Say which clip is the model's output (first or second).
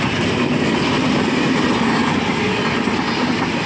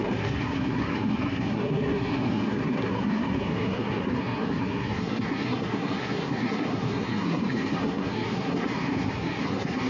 second